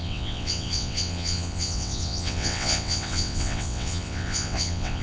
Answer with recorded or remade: remade